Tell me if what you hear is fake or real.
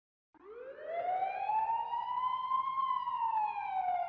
real